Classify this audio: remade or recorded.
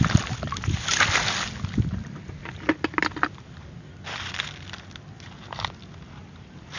recorded